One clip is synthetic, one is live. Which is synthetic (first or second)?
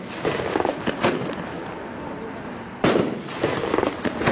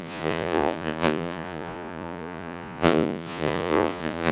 second